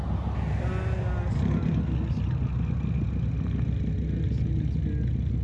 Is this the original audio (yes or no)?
yes